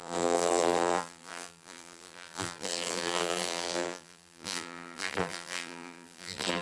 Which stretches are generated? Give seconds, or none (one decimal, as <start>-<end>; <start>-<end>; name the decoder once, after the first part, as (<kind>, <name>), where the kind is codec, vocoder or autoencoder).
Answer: 0.0-6.6 (vocoder, BigVGAN v2)